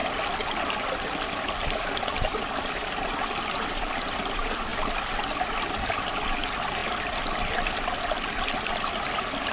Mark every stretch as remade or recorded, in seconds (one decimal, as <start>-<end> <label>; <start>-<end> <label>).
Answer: 0.0-3.0 recorded; 3.0-4.7 remade; 4.7-5.3 recorded; 5.3-6.8 remade; 6.8-8.7 recorded; 8.7-9.5 remade